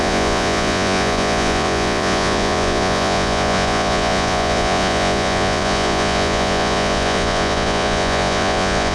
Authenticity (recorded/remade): remade